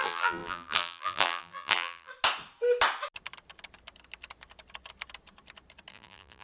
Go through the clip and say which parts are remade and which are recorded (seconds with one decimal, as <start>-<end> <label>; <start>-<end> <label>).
0.0-2.1 remade; 2.1-5.9 recorded; 5.9-6.4 remade